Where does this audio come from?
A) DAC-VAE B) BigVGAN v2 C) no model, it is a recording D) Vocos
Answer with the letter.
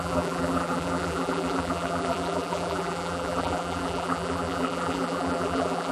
B